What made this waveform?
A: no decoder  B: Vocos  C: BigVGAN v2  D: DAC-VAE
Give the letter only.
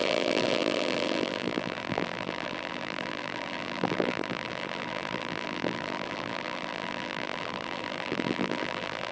C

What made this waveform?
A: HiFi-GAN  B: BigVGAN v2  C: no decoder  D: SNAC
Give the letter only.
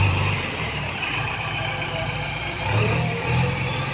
B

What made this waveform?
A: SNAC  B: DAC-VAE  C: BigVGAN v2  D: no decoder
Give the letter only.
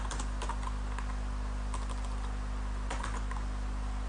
D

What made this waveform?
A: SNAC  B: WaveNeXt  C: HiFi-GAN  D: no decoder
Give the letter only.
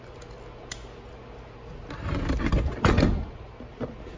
D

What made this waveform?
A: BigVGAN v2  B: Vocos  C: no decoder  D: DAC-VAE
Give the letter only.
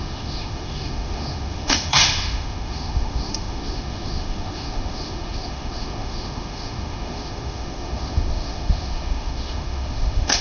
D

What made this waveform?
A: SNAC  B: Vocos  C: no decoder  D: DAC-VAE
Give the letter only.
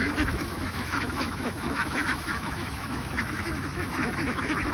D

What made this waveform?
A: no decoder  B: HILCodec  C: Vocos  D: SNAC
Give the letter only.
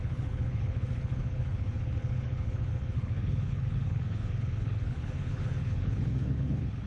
B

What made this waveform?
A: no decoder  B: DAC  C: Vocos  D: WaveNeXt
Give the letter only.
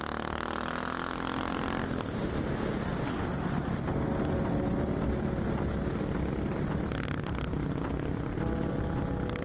A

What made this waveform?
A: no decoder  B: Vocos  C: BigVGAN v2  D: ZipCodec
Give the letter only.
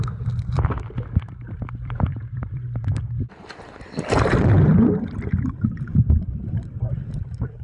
C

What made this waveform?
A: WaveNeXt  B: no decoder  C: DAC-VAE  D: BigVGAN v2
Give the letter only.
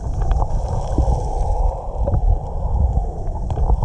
B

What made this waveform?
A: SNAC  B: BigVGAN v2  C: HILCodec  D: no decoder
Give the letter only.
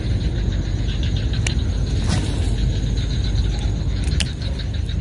D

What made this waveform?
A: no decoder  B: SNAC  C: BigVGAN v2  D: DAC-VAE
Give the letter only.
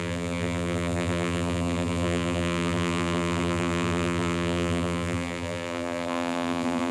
C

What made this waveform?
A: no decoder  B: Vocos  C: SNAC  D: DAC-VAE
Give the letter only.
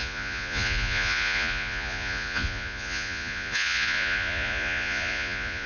B